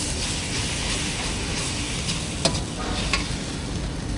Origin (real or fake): real